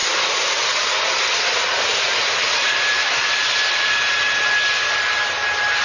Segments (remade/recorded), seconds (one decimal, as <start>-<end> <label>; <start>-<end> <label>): 0.0-1.9 recorded; 1.9-4.1 remade; 4.1-5.8 recorded